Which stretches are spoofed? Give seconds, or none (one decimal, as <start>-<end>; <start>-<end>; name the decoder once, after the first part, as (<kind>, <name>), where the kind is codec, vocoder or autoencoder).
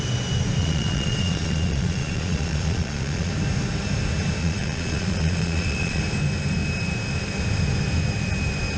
0.6-3.3 (vocoder, Vocos); 4.4-6.0